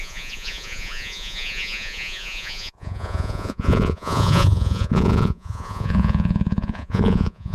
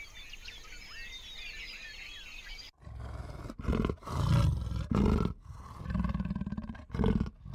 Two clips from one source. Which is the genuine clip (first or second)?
second